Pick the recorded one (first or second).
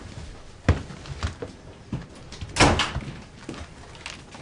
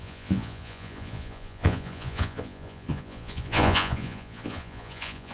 first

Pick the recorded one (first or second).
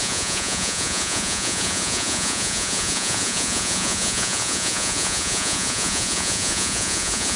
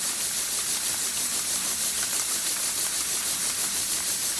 second